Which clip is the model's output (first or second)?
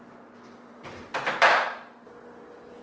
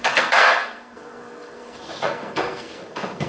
second